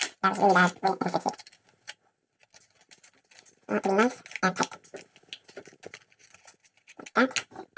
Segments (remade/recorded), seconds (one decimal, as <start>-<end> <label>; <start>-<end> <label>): 0.0-0.8 recorded; 0.8-1.3 remade; 1.3-7.8 recorded